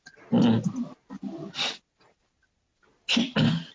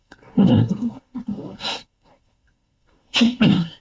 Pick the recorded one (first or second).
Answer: first